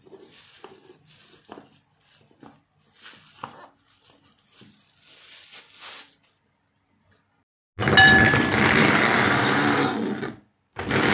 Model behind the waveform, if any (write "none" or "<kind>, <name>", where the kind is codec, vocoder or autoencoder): none